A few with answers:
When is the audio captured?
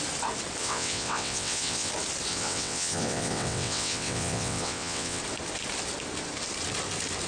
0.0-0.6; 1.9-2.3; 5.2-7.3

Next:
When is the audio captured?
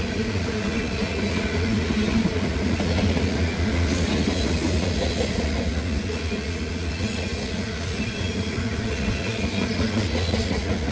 none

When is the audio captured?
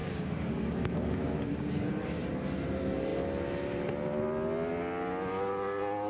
1.9-6.1